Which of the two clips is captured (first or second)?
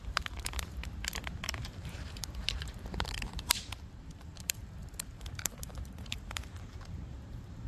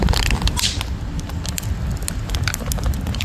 second